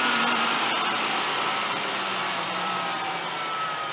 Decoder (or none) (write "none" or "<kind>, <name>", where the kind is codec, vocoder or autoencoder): vocoder, BigVGAN v2